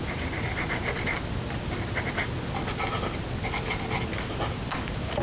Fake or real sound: real